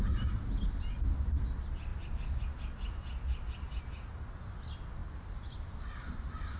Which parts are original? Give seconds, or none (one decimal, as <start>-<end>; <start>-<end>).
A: 0.0-6.6